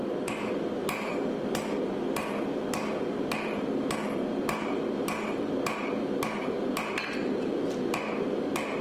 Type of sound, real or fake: real